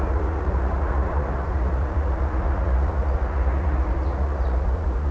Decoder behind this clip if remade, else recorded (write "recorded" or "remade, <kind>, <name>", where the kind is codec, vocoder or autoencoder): remade, vocoder, Vocos